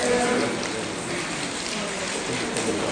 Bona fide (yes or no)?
yes